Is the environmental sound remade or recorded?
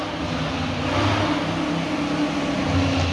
recorded